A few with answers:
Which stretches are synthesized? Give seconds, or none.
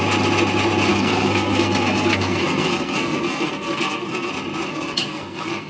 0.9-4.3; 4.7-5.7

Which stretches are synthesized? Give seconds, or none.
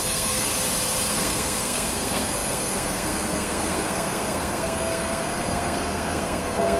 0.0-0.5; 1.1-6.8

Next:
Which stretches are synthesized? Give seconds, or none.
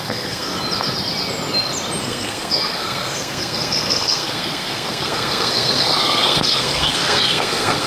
0.0-0.5; 2.0-7.9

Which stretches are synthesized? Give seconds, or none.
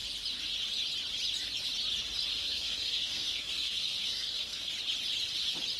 2.3-4.7